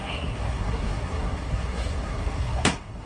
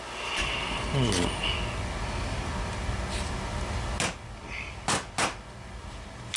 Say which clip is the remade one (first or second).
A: first